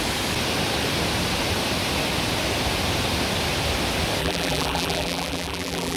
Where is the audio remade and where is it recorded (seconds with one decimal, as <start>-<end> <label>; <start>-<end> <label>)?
0.0-4.2 recorded; 4.2-6.0 remade